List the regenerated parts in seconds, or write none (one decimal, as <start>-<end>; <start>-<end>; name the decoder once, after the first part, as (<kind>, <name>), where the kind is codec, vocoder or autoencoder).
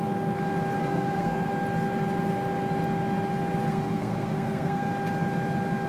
0.8-1.5 (codec, SNAC); 3.7-4.9